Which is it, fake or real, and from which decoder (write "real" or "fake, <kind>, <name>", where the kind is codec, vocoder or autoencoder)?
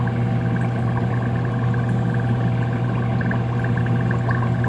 real